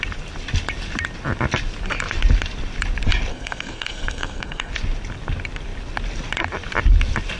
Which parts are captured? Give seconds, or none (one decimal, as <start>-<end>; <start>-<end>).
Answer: 0.0-3.3; 4.7-7.4